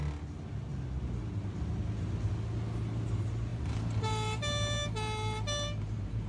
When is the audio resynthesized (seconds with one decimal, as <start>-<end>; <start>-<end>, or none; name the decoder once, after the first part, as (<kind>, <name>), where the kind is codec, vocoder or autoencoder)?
3.5-6.3 (vocoder, BigVGAN v2)